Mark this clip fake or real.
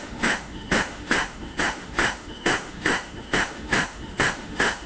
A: fake